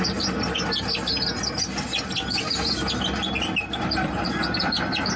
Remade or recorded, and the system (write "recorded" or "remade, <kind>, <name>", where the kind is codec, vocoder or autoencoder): recorded